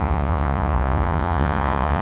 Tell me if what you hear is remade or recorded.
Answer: remade